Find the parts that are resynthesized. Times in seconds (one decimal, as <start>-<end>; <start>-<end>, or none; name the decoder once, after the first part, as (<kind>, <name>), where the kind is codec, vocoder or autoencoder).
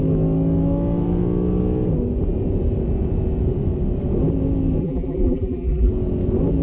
4.8-5.9 (vocoder, BigVGAN v2)